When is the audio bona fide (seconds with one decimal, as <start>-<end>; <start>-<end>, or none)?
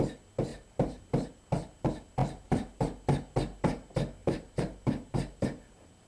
0.0-0.5; 1.0-2.2; 2.8-4.2